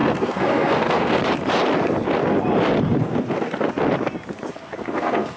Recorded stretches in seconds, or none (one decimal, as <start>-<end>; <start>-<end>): 1.2-3.0; 3.7-4.5